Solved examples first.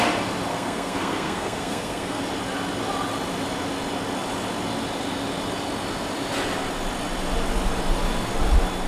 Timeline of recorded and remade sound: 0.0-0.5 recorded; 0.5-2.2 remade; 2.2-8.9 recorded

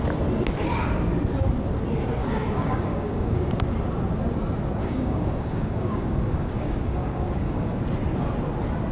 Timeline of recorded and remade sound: 0.0-2.2 recorded; 2.2-3.5 remade; 3.5-4.8 recorded; 4.8-7.8 remade; 7.8-8.9 recorded